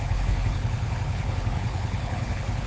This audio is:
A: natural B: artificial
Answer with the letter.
B